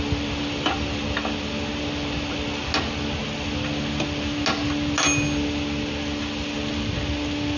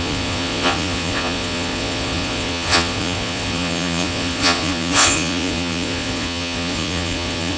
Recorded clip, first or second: first